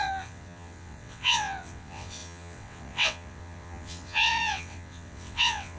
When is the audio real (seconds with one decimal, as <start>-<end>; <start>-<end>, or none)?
none